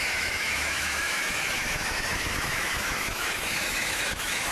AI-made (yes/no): yes